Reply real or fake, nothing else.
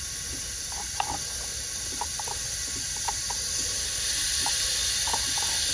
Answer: real